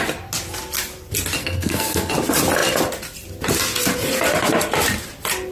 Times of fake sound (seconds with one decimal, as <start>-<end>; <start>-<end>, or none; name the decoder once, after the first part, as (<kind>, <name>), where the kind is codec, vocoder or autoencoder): 1.4-2.1 (codec, SNAC)